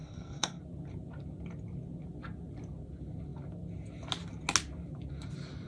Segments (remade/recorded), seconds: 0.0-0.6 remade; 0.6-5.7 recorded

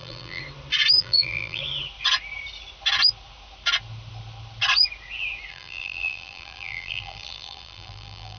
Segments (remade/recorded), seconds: 0.0-0.4 remade; 0.4-1.0 recorded; 1.0-1.6 remade; 1.6-5.5 recorded; 5.5-8.4 remade

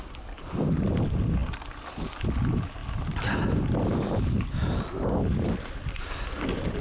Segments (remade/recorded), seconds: 0.0-6.8 recorded

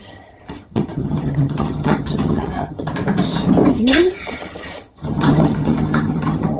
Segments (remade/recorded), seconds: 0.0-2.9 remade; 2.9-3.7 recorded; 3.7-6.6 remade